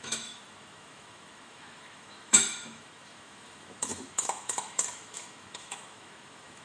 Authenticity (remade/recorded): remade